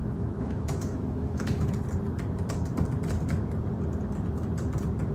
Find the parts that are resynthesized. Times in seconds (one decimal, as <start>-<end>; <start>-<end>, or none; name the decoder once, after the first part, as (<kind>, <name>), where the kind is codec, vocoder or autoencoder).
0.0-1.7 (autoencoder, DAC-VAE)